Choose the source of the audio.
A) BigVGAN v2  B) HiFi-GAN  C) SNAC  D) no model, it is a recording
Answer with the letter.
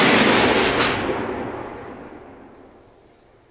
D